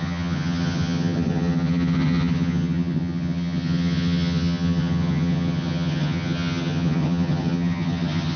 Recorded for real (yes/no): no